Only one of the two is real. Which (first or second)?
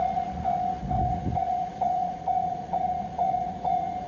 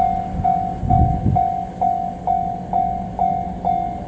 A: second